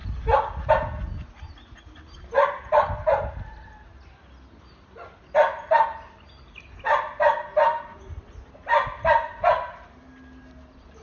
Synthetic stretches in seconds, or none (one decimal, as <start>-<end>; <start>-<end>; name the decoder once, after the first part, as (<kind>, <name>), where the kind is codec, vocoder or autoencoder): none